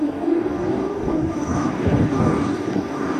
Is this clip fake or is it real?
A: fake